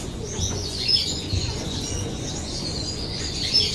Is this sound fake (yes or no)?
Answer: yes